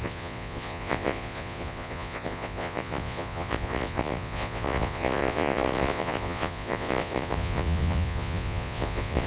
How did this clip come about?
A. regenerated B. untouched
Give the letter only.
A